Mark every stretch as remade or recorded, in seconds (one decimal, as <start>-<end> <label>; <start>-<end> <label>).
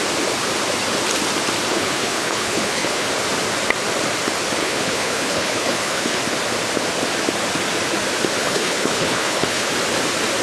0.0-1.7 recorded; 1.7-3.1 remade; 3.1-4.6 recorded; 4.6-6.2 remade; 6.2-8.4 recorded; 8.4-9.7 remade; 9.7-10.4 recorded